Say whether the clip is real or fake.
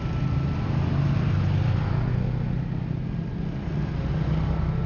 real